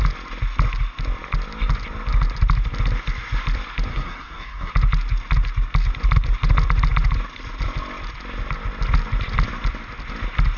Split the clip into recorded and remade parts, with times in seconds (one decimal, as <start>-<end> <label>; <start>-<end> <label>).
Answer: 0.0-3.9 recorded; 3.9-4.7 remade; 4.7-10.6 recorded